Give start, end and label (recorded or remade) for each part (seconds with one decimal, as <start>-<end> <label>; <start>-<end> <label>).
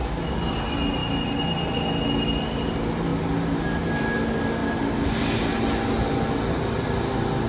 0.0-7.5 recorded